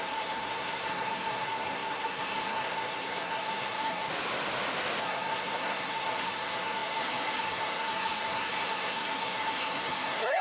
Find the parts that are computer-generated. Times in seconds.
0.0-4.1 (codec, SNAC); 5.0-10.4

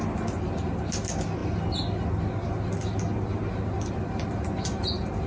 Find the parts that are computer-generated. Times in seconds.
none

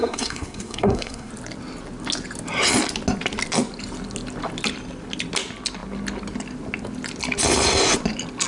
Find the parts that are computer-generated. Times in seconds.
0.0-1.3 (codec, SNAC)

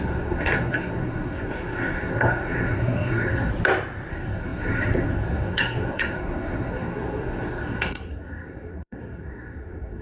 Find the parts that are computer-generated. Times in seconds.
0.0-3.5 (codec, SNAC); 4.1-10.0

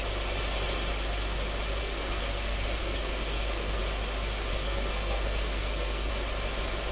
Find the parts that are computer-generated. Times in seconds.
1.8-3.8 (codec, SNAC); 4.5-6.1

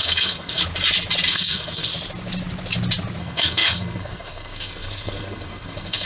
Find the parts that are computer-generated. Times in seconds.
0.0-0.6 (codec, SNAC); 1.3-1.9; 3.2-6.1